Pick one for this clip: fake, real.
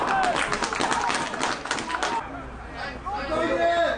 real